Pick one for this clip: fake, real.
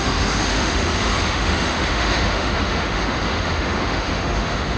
fake